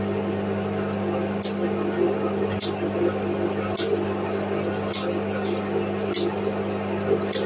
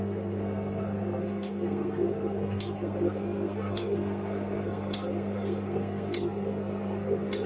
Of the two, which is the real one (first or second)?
first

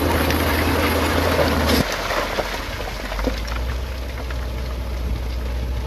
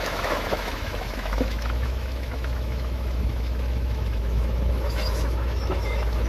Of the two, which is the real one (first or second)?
first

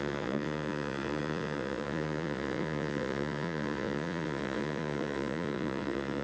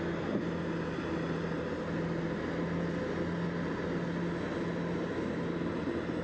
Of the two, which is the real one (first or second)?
second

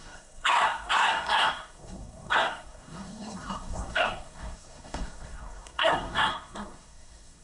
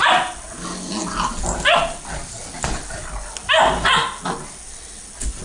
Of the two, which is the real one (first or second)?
second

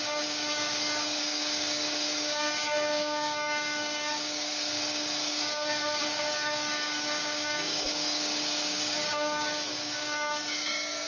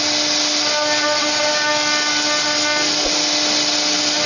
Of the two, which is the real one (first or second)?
second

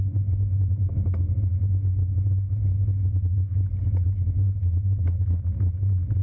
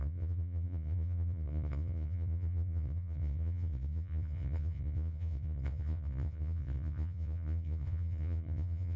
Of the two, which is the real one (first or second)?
first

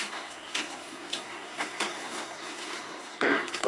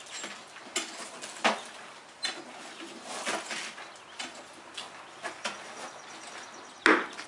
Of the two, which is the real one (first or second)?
second